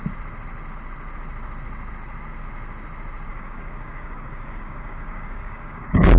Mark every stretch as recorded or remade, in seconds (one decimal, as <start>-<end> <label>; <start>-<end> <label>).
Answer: 0.0-3.3 recorded; 3.3-6.2 remade